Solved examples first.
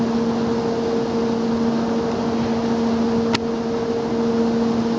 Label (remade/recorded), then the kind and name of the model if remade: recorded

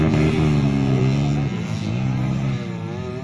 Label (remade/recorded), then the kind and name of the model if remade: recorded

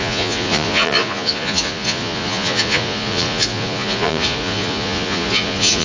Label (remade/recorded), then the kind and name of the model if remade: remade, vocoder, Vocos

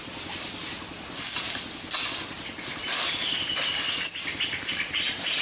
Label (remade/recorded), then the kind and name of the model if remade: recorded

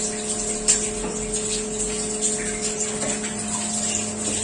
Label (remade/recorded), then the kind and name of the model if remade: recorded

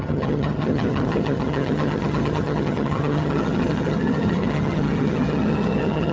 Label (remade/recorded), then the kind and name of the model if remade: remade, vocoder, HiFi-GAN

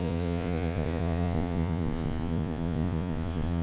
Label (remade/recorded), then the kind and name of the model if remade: remade, vocoder, Vocos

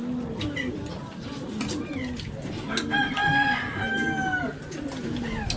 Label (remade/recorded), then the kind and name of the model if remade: recorded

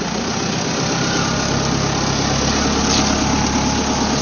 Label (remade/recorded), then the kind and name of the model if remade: recorded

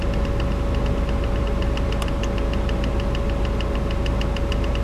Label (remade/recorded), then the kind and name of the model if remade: recorded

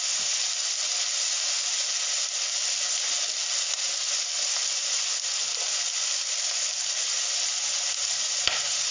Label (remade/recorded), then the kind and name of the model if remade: recorded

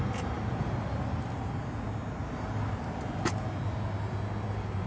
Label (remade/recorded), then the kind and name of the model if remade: recorded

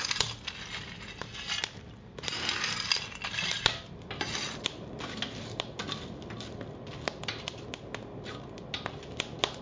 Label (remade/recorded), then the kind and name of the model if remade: recorded